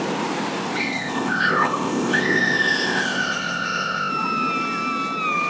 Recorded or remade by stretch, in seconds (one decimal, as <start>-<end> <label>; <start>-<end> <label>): 0.0-0.8 recorded; 0.8-4.1 remade; 4.1-5.5 recorded